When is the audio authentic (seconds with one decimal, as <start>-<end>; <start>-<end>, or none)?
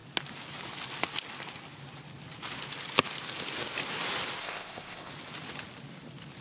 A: 0.0-4.4; 5.1-6.4